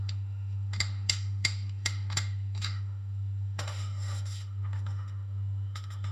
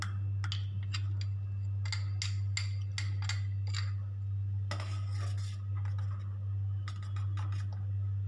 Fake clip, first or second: first